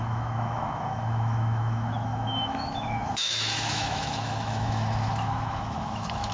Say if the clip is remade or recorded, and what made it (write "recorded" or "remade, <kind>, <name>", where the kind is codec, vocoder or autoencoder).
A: remade, autoencoder, DAC-VAE